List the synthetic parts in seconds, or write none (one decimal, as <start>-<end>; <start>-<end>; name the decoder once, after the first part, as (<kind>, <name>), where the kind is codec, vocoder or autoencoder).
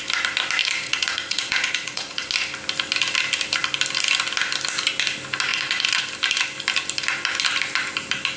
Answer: 0.6-2.3 (vocoder, Vocos); 5.5-6.0